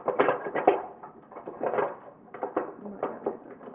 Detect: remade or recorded recorded